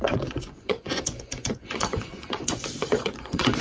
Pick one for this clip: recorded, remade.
remade